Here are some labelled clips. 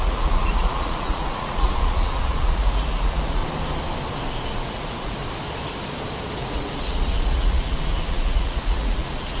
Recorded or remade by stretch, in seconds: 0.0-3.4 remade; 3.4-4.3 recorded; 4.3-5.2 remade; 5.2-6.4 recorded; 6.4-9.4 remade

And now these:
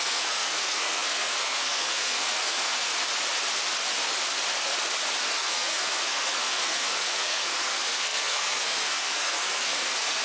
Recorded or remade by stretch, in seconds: 0.0-2.9 remade; 2.9-5.2 recorded; 5.2-10.2 remade

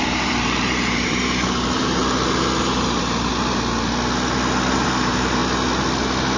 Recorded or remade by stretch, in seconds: 0.0-2.0 remade; 2.0-2.6 recorded; 2.6-3.3 remade; 3.3-4.7 recorded; 4.7-5.4 remade; 5.4-6.4 recorded

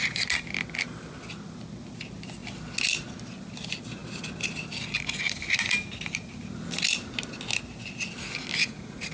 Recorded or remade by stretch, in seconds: 0.0-8.6 recorded; 8.6-9.1 remade

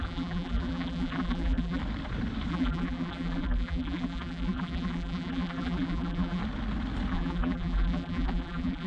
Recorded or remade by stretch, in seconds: 0.0-1.8 remade; 1.8-2.5 recorded; 2.5-6.4 remade; 6.4-7.1 recorded; 7.1-8.9 remade

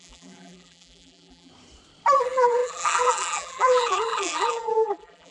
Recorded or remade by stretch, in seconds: 0.0-1.5 remade; 1.5-2.2 recorded; 2.2-5.3 remade

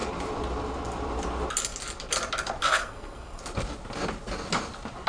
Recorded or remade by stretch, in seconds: 0.0-2.6 recorded; 2.6-3.4 remade; 3.4-5.1 recorded